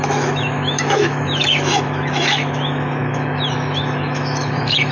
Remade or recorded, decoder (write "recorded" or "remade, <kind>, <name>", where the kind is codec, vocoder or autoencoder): remade, autoencoder, DAC-VAE